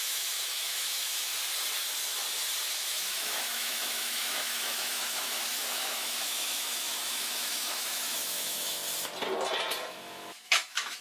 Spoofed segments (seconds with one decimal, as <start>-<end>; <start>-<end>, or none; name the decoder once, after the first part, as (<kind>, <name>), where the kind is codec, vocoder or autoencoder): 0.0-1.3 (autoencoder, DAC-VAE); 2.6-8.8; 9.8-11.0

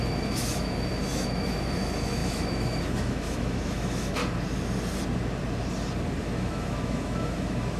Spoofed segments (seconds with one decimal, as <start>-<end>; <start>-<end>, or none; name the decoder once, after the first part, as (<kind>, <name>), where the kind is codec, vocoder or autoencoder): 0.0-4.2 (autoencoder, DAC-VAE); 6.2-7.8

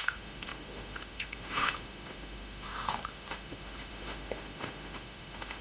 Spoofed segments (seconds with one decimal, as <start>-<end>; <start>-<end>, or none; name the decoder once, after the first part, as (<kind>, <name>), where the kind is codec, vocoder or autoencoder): 0.0-5.6 (autoencoder, DAC-VAE)

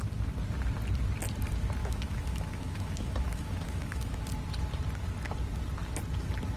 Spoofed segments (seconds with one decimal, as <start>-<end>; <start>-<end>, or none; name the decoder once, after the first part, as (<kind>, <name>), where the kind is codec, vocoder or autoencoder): 1.8-4.2 (autoencoder, DAC-VAE)

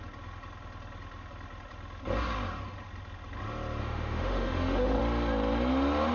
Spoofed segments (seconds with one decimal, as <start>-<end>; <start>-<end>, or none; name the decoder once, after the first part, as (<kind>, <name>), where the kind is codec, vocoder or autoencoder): 3.8-5.0 (autoencoder, DAC-VAE)

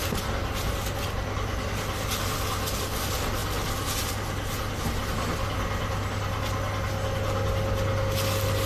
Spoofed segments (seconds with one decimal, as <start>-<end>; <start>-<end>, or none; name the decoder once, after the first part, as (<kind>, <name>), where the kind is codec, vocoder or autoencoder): none

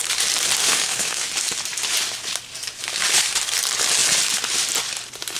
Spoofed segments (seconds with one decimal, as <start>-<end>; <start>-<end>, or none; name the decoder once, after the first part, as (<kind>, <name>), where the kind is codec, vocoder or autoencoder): 0.6-1.3 (autoencoder, DAC-VAE)

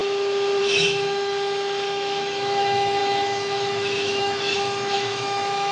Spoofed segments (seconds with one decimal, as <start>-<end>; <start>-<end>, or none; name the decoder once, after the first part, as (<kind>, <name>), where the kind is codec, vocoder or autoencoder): 0.6-5.7 (autoencoder, DAC-VAE)